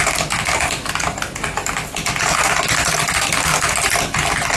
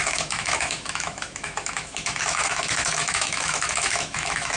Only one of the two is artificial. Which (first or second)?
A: second